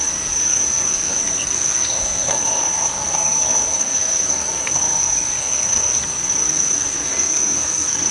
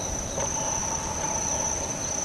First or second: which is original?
second